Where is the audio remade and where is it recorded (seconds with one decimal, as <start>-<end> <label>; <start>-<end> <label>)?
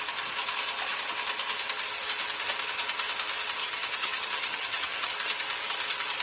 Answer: 0.0-3.6 recorded; 3.6-5.1 remade; 5.1-6.2 recorded